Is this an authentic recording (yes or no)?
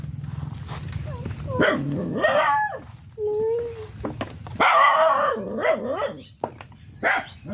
yes